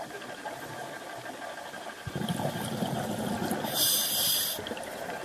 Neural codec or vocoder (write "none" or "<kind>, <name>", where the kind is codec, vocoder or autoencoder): none